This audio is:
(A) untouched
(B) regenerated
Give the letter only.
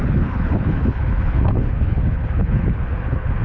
B